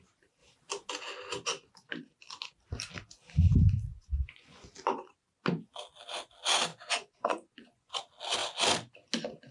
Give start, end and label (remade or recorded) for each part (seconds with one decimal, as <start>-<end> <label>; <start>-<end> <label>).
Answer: 0.0-3.9 recorded; 3.9-4.7 remade; 4.7-6.7 recorded; 6.7-8.0 remade; 8.0-9.5 recorded